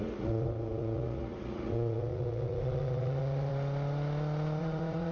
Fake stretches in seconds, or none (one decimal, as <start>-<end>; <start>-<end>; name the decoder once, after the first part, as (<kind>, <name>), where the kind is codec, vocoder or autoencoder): 0.0-3.5 (vocoder, Vocos); 4.6-5.1